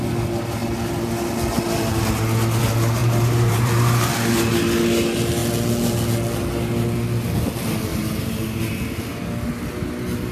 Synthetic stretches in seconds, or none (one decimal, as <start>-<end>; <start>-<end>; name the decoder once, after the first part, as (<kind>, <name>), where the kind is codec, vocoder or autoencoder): 3.0-4.1 (vocoder, BigVGAN v2); 7.9-8.6